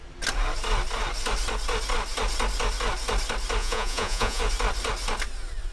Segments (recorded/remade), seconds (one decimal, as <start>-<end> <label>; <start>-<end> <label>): 0.0-3.6 recorded; 3.6-4.4 remade; 4.4-5.7 recorded

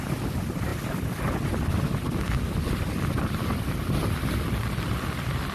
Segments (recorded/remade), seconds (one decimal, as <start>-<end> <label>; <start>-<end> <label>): 0.0-5.5 recorded